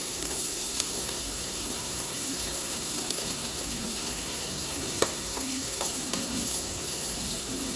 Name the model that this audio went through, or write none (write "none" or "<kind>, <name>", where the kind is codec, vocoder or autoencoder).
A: codec, SNAC